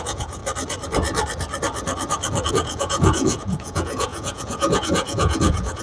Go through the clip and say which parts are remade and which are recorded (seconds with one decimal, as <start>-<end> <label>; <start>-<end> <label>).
0.0-0.4 remade; 0.4-2.5 recorded; 2.5-5.8 remade